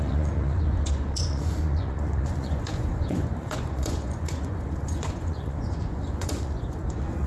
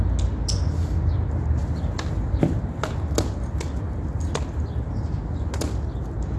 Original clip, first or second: second